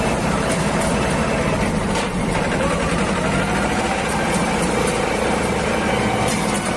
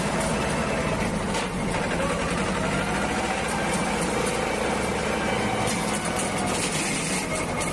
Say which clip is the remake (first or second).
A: first